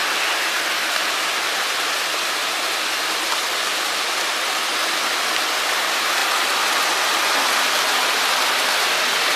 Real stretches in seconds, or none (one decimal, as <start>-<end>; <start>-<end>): 0.0-9.4